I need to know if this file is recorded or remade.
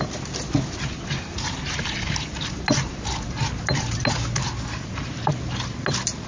recorded